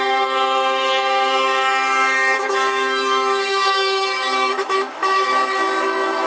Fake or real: fake